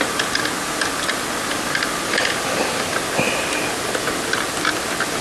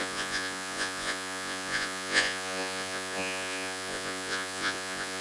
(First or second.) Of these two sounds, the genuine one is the first